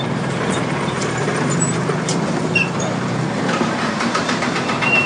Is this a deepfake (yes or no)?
yes